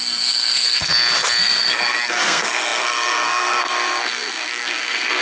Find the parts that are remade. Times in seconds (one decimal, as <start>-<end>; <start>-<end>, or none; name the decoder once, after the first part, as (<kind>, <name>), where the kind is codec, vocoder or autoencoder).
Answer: 0.0-0.9 (codec, SNAC); 1.4-5.2